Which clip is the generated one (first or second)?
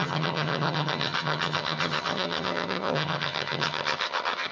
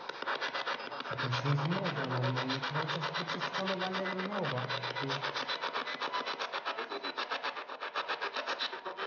first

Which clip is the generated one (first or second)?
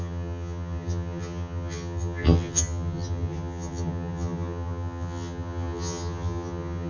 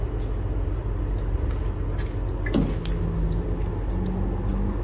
first